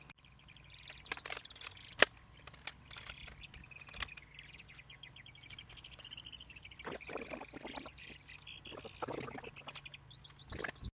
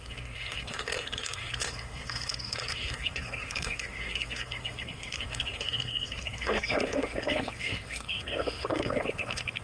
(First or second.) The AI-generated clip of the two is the second